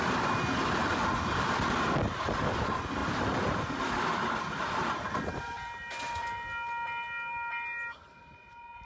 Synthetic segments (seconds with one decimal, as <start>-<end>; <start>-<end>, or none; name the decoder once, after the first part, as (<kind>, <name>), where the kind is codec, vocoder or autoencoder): 0.8-2.6 (vocoder, BigVGAN v2); 3.0-3.8